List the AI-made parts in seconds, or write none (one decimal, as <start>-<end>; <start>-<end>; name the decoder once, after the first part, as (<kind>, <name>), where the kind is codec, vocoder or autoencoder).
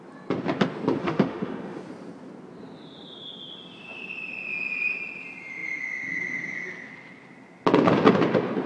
1.0-1.9 (autoencoder, DAC-VAE)